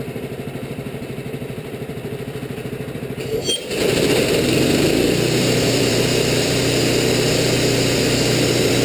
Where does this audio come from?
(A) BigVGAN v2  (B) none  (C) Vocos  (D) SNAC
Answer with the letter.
A